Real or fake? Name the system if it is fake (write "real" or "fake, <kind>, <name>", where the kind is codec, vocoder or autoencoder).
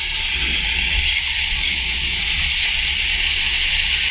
fake, vocoder, Vocos